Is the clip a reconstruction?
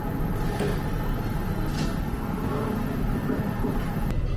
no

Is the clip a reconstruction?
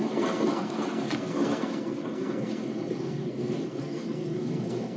yes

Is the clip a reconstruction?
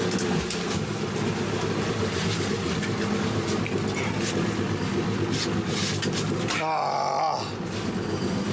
no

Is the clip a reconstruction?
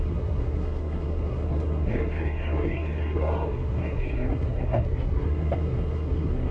yes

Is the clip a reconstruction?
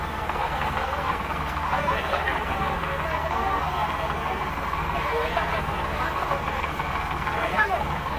yes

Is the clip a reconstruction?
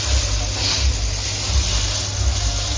no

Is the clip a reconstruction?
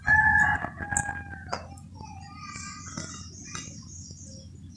no